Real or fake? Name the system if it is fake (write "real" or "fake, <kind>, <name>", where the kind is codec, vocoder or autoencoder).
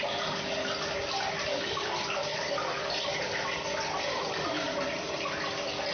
real